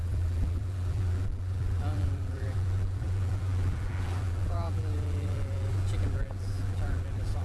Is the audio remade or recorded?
remade